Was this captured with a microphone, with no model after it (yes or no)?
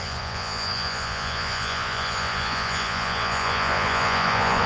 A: no